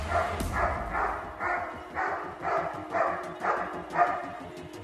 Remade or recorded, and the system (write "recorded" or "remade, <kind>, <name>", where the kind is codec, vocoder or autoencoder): recorded